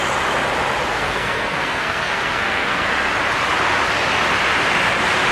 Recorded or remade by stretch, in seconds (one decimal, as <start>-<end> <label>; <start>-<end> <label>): 0.0-0.9 recorded; 0.9-3.1 remade; 3.1-5.3 recorded